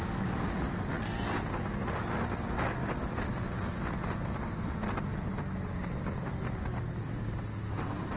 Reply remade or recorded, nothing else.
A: recorded